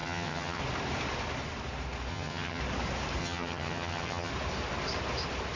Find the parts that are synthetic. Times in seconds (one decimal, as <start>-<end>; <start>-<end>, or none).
0.0-0.6; 2.1-2.6; 3.2-4.3